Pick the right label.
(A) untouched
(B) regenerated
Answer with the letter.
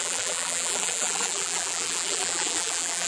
B